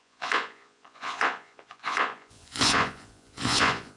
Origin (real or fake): fake